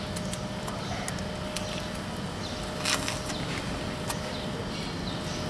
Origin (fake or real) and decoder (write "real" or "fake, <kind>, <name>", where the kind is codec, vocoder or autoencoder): real